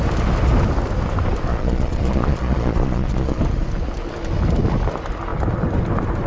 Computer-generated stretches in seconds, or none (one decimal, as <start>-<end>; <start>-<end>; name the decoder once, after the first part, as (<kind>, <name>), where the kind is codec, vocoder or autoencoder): 1.5-3.4 (vocoder, Vocos)